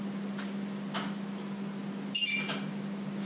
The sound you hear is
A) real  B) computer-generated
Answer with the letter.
A